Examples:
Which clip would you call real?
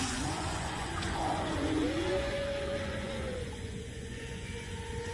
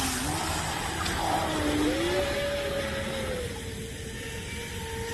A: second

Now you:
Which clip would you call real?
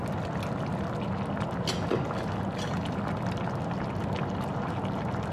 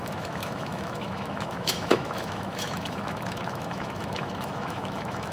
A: first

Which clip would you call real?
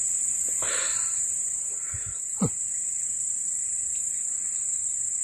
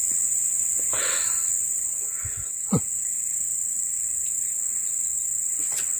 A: second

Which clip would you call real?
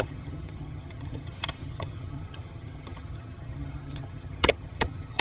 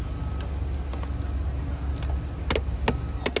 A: second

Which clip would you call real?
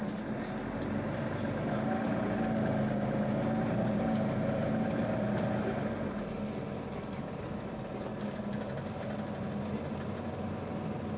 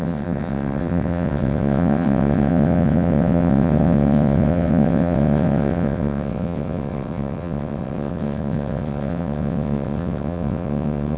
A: first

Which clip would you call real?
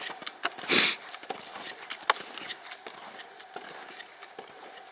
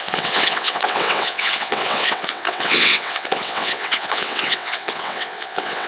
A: first